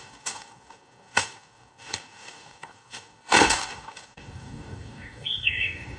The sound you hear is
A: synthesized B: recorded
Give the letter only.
A